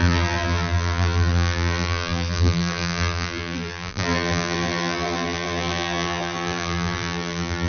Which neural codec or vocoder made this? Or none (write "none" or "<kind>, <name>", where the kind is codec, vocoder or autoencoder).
vocoder, BigVGAN v2